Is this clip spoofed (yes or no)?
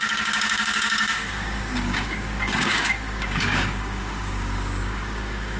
yes